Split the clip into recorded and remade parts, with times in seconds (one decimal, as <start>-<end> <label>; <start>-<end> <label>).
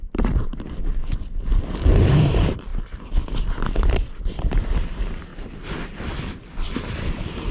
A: 0.0-1.0 remade; 1.0-2.1 recorded; 2.1-2.7 remade; 2.7-3.6 recorded; 3.6-5.3 remade; 5.3-6.8 recorded; 6.8-7.5 remade